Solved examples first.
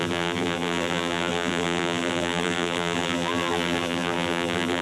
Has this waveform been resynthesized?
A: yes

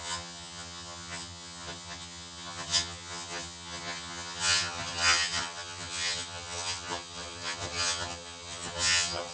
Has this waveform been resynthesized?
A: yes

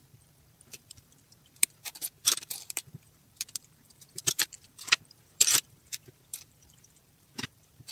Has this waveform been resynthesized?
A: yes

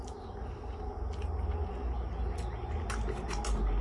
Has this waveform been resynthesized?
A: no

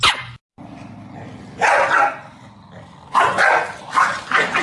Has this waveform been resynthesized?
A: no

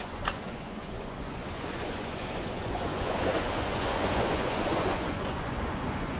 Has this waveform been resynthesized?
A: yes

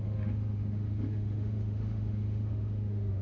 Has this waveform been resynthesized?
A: yes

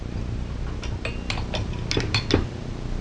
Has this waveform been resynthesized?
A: no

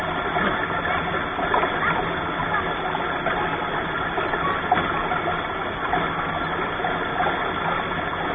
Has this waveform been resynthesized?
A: no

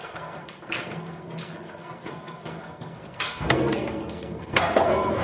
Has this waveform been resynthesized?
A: yes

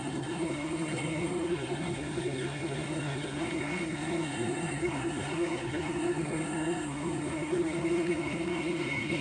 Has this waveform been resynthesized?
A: yes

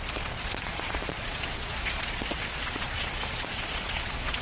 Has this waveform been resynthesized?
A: yes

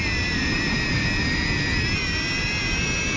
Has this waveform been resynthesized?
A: no